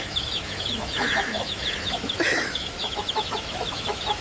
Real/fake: fake